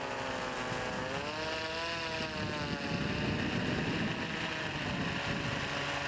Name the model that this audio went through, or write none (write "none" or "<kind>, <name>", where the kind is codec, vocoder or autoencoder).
none